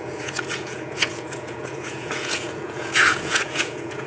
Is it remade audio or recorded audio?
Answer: remade